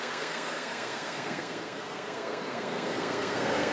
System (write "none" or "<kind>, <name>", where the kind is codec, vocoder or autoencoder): codec, SNAC